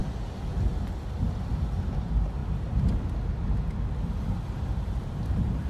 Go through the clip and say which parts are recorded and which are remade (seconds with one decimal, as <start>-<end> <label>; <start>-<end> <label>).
0.0-1.3 recorded; 1.3-2.4 remade; 2.4-4.6 recorded; 4.6-5.7 remade